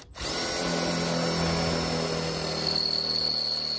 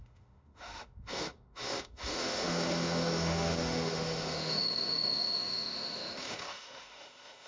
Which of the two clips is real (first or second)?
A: first